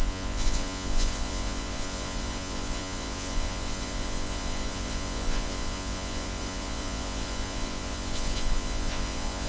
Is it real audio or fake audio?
fake